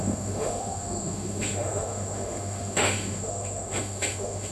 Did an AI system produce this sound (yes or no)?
yes